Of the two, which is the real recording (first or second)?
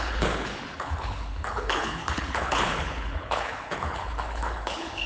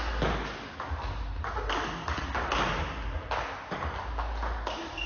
second